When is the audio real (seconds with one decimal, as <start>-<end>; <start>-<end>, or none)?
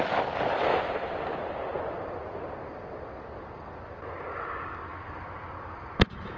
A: 0.0-6.4